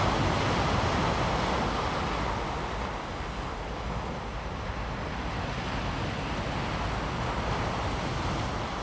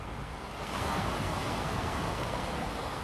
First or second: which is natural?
first